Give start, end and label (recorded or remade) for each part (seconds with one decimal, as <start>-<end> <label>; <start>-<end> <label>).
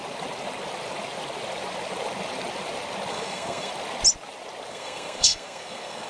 0.0-3.1 recorded; 3.1-3.7 remade; 3.7-4.7 recorded; 4.7-6.1 remade